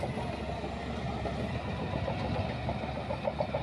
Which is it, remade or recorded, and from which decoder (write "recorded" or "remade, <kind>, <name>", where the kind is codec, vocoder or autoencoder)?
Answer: recorded